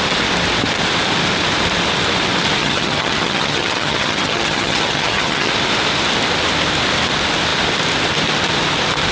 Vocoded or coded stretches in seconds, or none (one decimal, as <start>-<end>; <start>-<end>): 2.6-5.5